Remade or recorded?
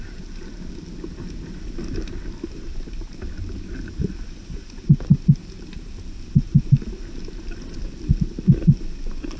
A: recorded